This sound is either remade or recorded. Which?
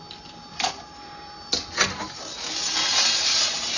recorded